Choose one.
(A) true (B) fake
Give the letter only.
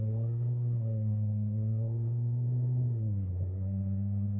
B